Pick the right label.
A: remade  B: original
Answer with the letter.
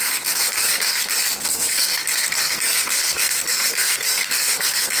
A